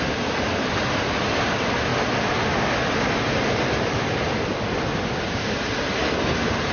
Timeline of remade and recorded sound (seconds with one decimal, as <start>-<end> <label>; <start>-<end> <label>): 0.0-1.9 remade; 1.9-5.2 recorded; 5.2-6.0 remade; 6.0-6.7 recorded